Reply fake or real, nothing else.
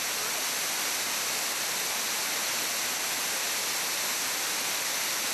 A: real